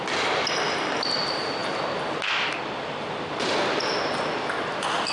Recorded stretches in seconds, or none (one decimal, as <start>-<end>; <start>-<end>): 0.0-5.1